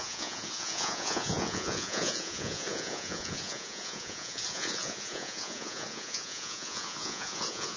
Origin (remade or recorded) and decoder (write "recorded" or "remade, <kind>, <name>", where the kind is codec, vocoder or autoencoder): remade, vocoder, Vocos